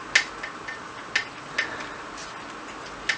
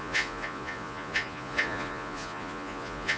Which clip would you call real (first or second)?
first